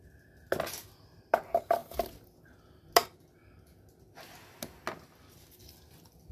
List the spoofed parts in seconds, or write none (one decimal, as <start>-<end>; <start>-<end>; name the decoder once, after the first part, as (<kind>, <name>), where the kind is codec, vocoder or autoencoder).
none